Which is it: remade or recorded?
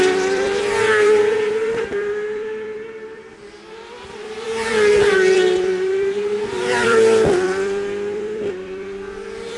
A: remade